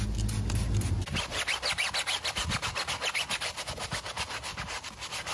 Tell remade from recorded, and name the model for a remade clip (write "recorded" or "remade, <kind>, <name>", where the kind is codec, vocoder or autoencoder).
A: recorded